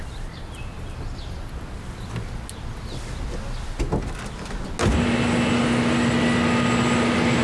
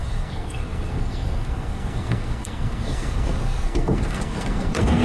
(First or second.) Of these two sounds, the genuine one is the first